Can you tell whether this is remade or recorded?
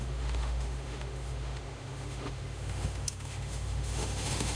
remade